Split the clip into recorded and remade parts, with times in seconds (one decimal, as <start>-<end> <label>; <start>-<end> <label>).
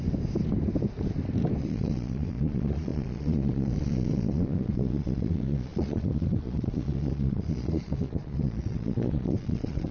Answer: 0.0-1.6 recorded; 1.6-9.9 remade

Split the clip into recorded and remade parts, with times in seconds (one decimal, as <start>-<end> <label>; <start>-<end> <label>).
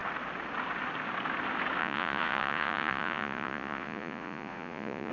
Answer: 0.0-1.8 recorded; 1.8-5.1 remade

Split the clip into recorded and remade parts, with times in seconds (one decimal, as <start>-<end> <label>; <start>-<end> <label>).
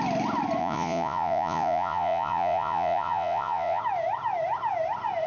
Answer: 0.0-0.6 recorded; 0.6-3.8 remade; 3.8-5.3 recorded